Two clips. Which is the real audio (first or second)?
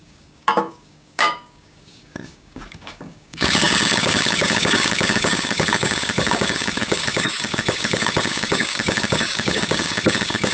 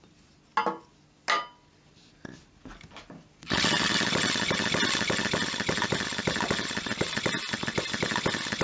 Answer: second